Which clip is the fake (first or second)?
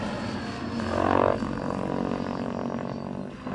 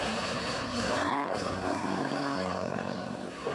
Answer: second